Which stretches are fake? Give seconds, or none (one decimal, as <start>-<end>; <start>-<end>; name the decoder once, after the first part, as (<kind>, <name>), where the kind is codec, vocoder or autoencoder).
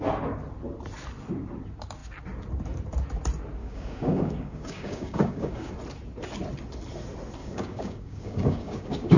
3.6-5.7 (codec, DAC); 7.4-9.2